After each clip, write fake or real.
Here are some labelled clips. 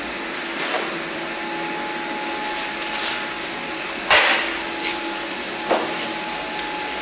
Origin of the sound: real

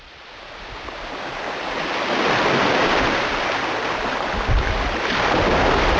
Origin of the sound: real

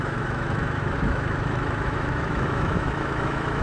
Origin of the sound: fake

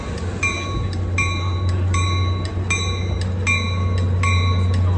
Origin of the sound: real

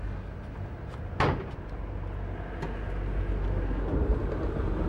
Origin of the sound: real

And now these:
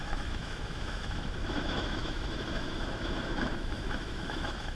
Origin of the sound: fake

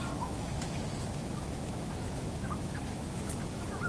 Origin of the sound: fake